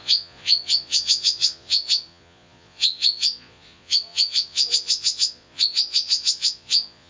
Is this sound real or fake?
fake